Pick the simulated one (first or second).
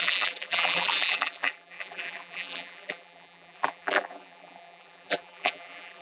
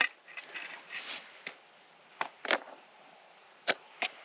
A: first